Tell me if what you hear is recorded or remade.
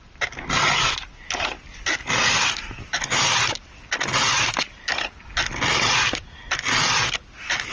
recorded